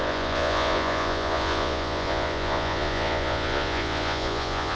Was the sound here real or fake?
fake